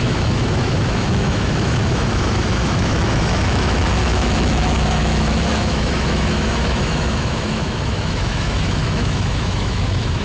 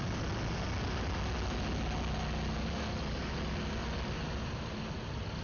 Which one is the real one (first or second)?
second